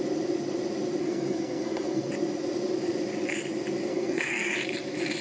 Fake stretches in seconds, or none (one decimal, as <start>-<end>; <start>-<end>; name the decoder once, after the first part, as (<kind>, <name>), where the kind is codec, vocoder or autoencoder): 1.0-2.1 (codec, SNAC); 3.9-4.5